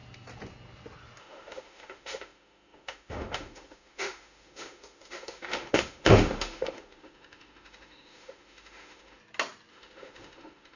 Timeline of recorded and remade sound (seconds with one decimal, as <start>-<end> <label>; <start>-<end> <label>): 0.0-1.2 recorded; 1.2-9.2 remade; 9.2-9.7 recorded; 9.7-10.8 remade